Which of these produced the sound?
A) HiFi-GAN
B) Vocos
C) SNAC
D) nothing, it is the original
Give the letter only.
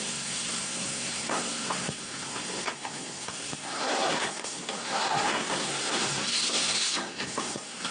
C